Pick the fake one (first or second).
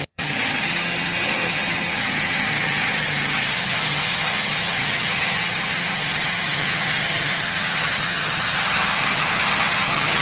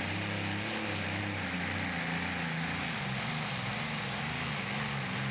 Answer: first